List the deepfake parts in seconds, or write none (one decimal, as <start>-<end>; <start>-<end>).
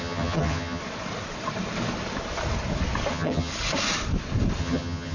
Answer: 0.0-0.8; 3.1-3.5; 4.6-5.1